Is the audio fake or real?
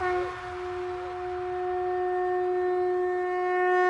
real